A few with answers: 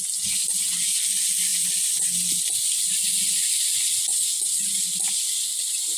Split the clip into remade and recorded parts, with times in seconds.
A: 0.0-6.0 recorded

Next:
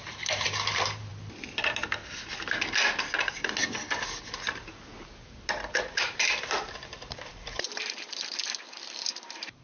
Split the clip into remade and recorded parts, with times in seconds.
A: 0.0-1.1 remade; 1.1-5.8 recorded; 5.8-9.6 remade

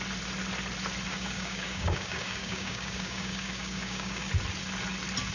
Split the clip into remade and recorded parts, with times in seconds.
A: 0.0-1.1 recorded; 1.1-4.3 remade; 4.3-5.3 recorded

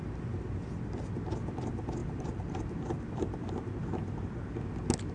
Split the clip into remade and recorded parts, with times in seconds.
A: 0.0-5.1 recorded